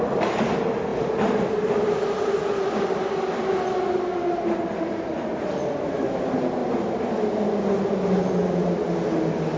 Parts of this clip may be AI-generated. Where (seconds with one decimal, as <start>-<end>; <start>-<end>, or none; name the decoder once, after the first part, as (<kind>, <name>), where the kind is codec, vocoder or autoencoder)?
0.9-1.5 (vocoder, BigVGAN v2); 6.6-7.3